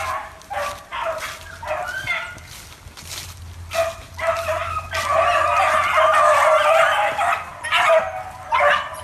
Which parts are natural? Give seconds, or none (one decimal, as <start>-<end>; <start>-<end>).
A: 0.0-9.0